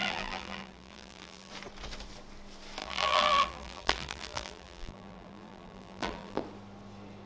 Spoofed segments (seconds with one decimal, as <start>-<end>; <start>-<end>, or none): 0.0-1.5; 2.8-6.4